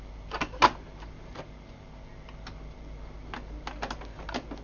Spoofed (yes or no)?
no